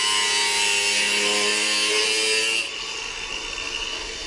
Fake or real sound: real